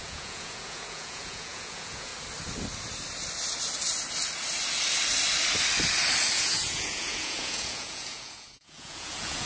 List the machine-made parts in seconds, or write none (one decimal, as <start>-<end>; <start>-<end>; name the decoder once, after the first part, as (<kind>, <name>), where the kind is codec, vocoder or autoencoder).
0.0-2.1 (vocoder, Vocos); 6.4-9.4